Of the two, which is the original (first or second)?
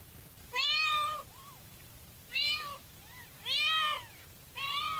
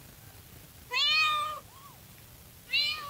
second